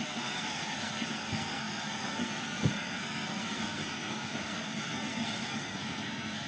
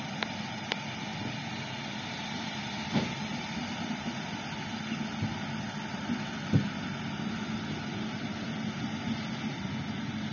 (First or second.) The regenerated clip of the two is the first